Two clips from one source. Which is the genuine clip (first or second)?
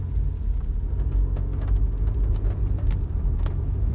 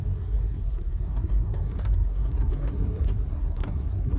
first